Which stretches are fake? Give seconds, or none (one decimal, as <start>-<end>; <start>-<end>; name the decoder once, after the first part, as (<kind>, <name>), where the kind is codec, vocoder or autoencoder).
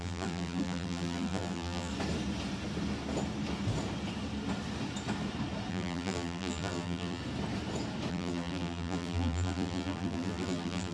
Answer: 0.0-1.9 (vocoder, BigVGAN v2); 5.7-7.2; 8.1-10.9